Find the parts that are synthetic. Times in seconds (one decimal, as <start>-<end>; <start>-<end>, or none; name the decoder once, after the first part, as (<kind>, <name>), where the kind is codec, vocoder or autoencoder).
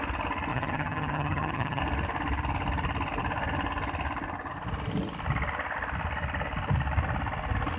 0.5-1.8 (vocoder, HiFi-GAN)